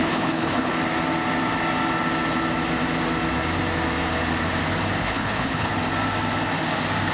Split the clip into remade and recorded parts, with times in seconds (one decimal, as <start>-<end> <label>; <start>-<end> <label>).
0.0-0.7 remade; 0.7-5.0 recorded; 5.0-5.7 remade; 5.7-7.1 recorded